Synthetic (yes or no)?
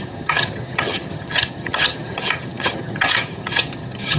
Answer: yes